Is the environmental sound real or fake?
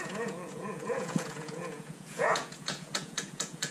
fake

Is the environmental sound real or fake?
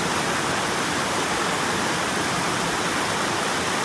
real